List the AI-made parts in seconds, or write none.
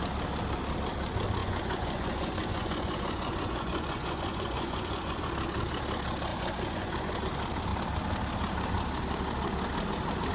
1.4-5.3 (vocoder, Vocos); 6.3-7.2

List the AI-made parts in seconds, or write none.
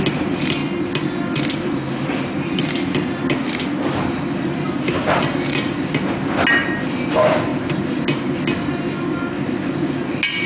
none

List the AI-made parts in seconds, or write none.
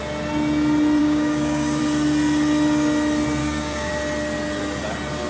1.0-1.8 (codec, DAC); 3.4-3.9